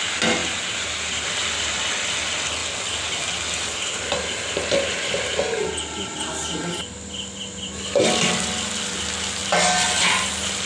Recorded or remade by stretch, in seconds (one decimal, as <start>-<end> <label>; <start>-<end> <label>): 0.0-10.7 recorded